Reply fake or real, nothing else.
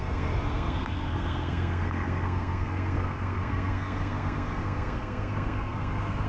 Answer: fake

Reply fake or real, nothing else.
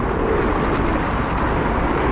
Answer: real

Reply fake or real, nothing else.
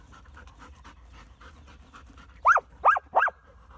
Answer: real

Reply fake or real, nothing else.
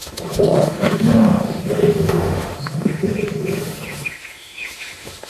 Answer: fake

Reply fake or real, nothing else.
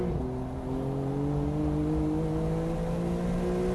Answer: real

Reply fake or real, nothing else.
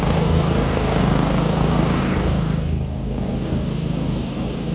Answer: fake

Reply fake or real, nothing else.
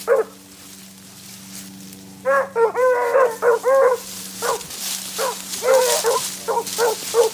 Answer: real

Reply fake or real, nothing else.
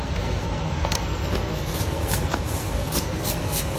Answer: fake